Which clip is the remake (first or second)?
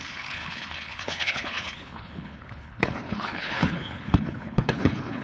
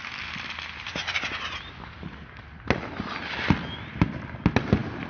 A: first